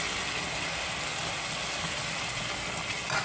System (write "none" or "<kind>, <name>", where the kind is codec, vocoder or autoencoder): none